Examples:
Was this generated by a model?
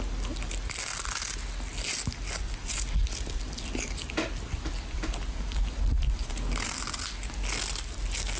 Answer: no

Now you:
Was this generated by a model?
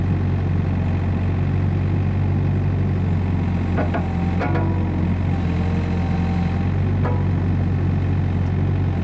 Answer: no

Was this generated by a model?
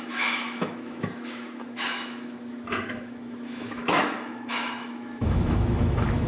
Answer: yes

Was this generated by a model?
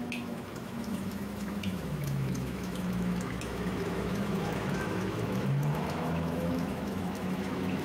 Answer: yes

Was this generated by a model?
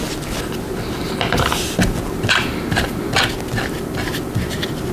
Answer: no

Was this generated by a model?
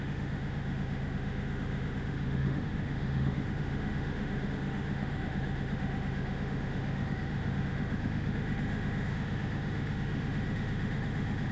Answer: yes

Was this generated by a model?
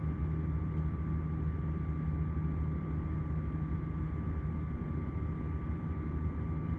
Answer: no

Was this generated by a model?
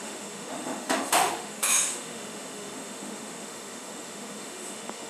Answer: yes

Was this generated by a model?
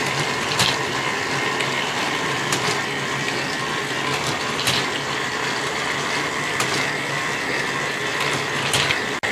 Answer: no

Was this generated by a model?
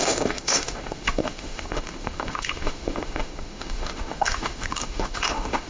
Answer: yes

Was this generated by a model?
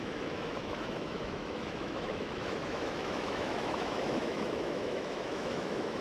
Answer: yes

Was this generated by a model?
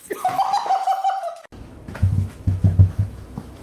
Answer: yes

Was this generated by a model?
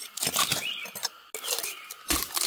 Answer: no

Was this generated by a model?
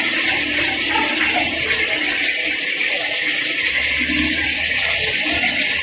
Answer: no